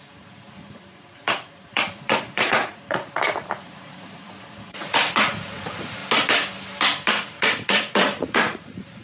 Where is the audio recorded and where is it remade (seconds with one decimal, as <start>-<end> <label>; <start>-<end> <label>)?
0.0-6.0 remade; 6.0-7.1 recorded; 7.1-9.0 remade